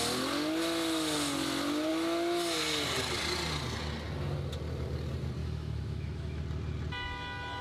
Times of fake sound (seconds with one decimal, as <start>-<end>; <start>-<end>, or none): 5.4-6.4